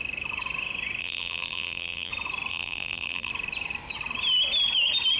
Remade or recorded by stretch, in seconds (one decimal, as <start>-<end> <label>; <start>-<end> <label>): 0.0-1.0 recorded; 1.0-2.1 remade; 2.1-2.5 recorded; 2.5-3.3 remade; 3.3-5.2 recorded